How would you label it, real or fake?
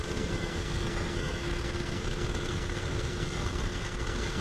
fake